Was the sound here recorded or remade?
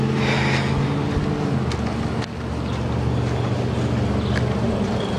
recorded